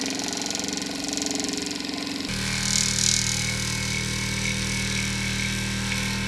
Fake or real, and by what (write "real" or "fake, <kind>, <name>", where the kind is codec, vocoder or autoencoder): real